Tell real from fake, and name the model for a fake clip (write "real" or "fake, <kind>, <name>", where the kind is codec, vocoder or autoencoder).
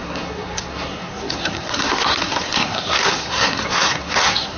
fake, codec, SNAC